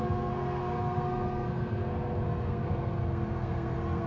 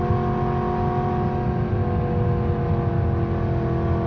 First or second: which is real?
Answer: second